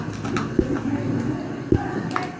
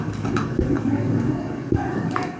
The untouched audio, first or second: first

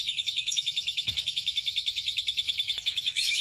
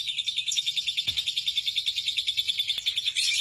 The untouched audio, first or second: second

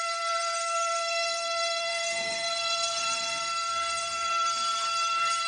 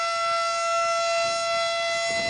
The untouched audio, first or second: second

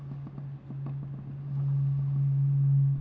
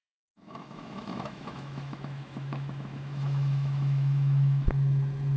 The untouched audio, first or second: first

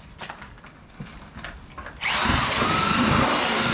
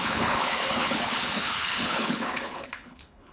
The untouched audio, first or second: first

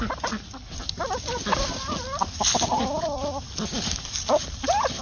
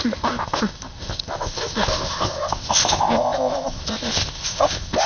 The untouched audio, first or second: first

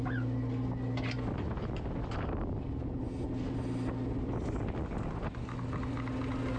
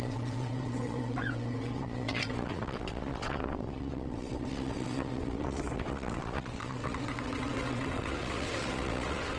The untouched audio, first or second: first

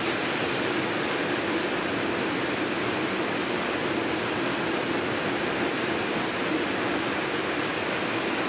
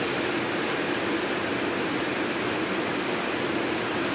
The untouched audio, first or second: second